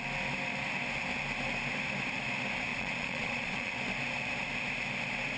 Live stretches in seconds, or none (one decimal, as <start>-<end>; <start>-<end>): 0.0-2.7; 3.7-5.4